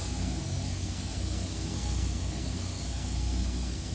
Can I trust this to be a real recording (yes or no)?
no